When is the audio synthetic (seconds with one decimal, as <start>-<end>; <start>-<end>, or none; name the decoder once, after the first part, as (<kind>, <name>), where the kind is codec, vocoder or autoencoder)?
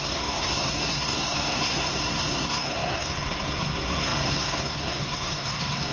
0.0-5.9 (codec, SNAC)